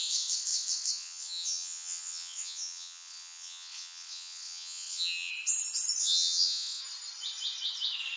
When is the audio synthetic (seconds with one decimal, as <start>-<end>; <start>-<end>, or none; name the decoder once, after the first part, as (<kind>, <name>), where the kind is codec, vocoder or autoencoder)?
0.0-5.3 (vocoder, WaveNeXt); 6.0-6.8